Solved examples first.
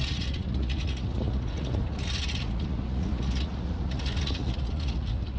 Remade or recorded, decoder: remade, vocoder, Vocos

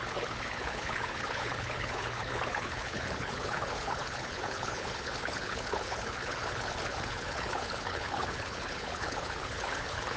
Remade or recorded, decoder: remade, codec, HILCodec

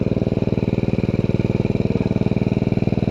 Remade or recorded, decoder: recorded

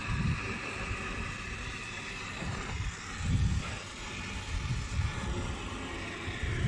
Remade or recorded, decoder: recorded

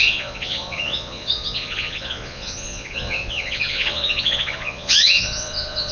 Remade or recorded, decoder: remade, vocoder, Vocos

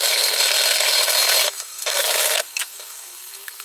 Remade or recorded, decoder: remade, codec, SNAC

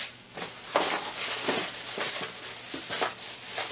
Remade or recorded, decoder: recorded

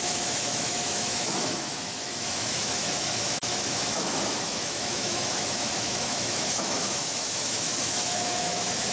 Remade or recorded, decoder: remade, autoencoder, DAC-VAE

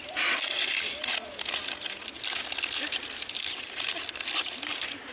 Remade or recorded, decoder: recorded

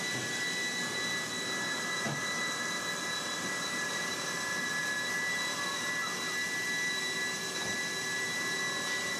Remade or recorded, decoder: recorded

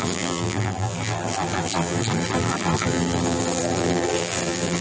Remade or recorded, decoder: remade, vocoder, BigVGAN v2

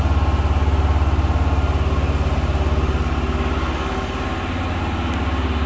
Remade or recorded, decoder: recorded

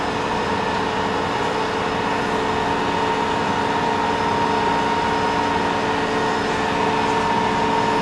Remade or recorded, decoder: recorded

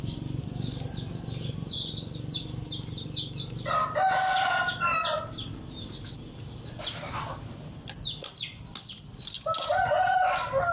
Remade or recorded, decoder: recorded